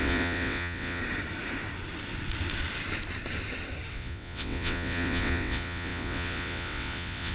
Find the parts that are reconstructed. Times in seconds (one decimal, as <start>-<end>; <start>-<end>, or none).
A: 0.0-1.0; 3.9-7.3